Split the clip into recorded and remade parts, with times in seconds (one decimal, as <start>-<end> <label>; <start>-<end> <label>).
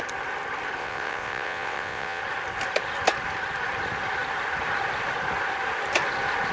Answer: 0.0-0.8 recorded; 0.8-2.2 remade; 2.2-6.5 recorded